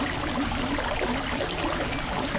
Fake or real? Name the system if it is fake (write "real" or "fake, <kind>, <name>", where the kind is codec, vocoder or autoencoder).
real